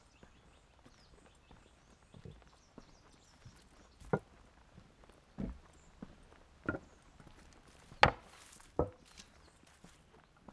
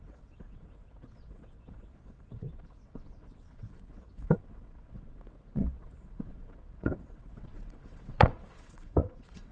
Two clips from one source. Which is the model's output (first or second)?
second